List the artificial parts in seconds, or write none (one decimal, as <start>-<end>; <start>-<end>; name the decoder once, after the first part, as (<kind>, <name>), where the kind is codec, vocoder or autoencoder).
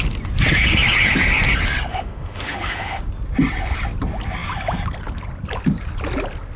1.9-3.0 (autoencoder, DAC-VAE)